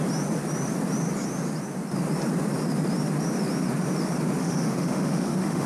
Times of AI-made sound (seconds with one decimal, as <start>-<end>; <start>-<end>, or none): 4.4-5.7